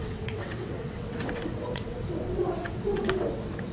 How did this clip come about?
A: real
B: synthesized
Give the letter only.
B